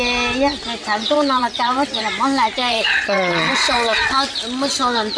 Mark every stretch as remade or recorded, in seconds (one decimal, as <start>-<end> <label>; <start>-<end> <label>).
0.0-0.8 recorded; 0.8-2.0 remade; 2.0-2.6 recorded; 2.6-4.3 remade; 4.3-5.2 recorded